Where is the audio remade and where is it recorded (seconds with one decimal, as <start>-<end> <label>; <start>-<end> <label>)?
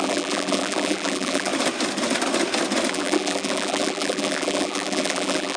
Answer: 0.0-1.5 remade; 1.5-2.9 recorded; 2.9-5.6 remade